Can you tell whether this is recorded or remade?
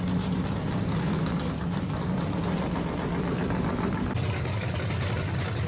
remade